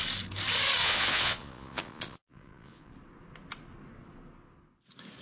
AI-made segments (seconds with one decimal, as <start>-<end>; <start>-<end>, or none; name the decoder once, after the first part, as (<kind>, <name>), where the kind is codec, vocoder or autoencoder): 0.8-2.9 (vocoder, Vocos)